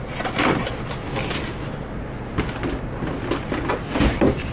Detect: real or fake real